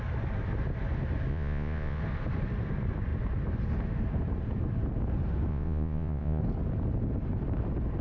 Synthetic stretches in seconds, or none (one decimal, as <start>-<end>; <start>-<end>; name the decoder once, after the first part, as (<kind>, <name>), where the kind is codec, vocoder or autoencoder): 1.3-2.0 (vocoder, Vocos); 5.5-6.4